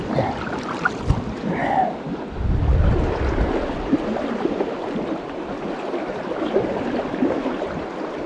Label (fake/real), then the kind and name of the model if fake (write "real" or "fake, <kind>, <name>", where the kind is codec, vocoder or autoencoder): real